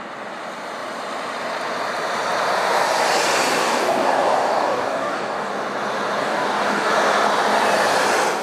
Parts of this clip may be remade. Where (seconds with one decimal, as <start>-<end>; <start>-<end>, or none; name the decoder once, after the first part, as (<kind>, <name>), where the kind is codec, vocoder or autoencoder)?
3.6-5.5 (codec, DAC); 6.2-6.9